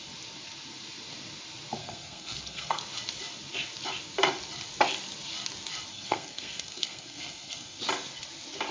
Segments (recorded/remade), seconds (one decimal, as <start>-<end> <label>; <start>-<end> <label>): 0.0-1.8 recorded; 1.8-2.8 remade; 2.8-5.9 recorded; 5.9-7.8 remade; 7.8-8.7 recorded